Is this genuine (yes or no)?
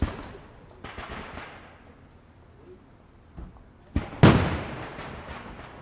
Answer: yes